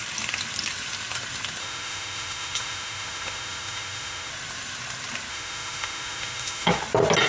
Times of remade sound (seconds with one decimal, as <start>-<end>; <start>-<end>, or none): 1.6-4.3; 5.3-6.8